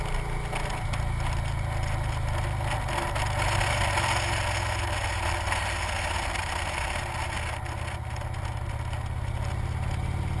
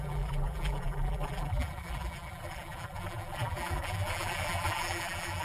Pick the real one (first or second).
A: first